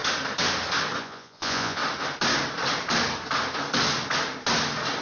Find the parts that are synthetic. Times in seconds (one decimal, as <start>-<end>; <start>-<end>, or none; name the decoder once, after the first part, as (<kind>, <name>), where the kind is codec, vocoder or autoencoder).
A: 1.0-1.8 (vocoder, Vocos)